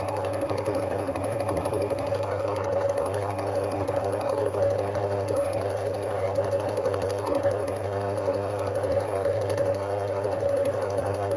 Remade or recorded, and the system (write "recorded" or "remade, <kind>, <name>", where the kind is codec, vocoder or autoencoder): remade, codec, SNAC